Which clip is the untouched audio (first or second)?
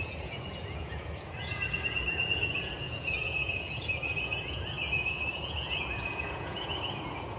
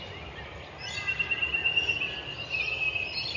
second